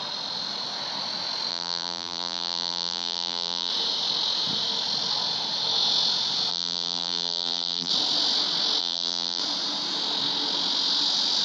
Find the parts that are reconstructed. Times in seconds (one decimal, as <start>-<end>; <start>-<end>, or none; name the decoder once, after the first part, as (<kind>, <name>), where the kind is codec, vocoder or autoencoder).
1.5-3.7 (vocoder, BigVGAN v2); 6.5-7.9; 8.8-9.4